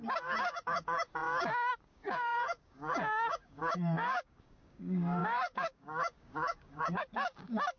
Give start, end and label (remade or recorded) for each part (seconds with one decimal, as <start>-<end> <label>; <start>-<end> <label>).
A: 0.0-7.8 remade